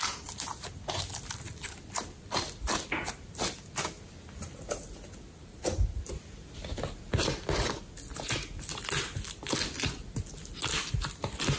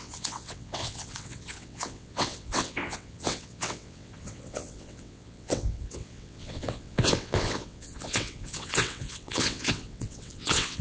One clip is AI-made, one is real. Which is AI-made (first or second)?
second